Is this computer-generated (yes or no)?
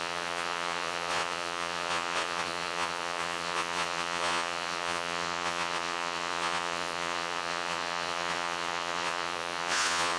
yes